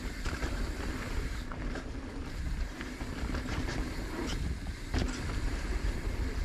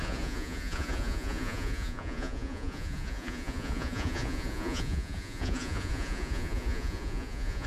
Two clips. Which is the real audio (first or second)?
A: first